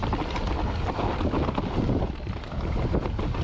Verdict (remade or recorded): recorded